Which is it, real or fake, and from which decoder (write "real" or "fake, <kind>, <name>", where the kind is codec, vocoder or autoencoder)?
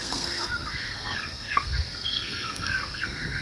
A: fake, codec, SNAC